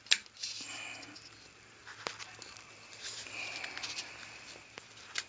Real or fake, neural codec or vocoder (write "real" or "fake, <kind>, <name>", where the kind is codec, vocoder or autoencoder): real